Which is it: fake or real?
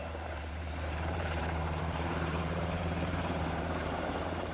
fake